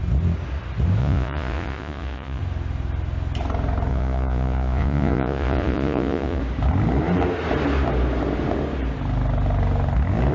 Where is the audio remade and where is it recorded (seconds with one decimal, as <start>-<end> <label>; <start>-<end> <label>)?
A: 0.0-1.0 recorded; 1.0-2.4 remade; 2.4-3.9 recorded; 3.9-6.4 remade; 6.4-10.3 recorded